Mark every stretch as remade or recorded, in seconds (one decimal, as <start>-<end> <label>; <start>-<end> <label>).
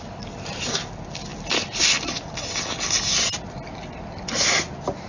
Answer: 0.0-5.1 recorded